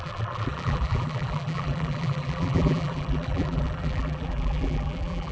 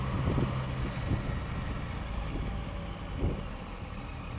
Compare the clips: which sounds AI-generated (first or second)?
first